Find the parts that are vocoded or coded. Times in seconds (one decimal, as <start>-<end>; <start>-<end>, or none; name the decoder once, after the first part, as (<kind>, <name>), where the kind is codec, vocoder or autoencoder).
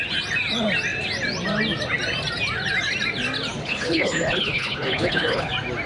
3.6-5.5 (codec, HILCodec)